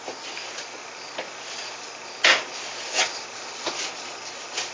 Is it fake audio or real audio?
real